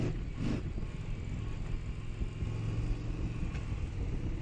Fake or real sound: real